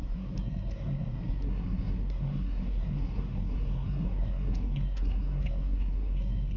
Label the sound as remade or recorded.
remade